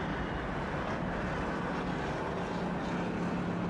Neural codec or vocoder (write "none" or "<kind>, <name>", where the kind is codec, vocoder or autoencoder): none